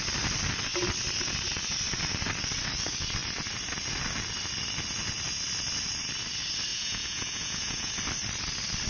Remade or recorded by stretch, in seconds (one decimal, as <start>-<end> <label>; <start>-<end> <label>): 0.0-6.7 recorded; 6.7-7.9 remade; 7.9-8.9 recorded